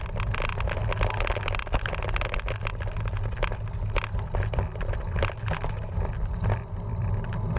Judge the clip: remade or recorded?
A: recorded